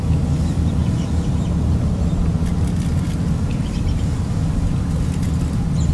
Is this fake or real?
real